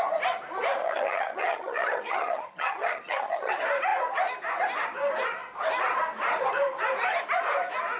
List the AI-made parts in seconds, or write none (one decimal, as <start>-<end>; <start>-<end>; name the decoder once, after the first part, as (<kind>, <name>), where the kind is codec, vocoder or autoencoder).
0.8-3.5 (vocoder, HiFi-GAN)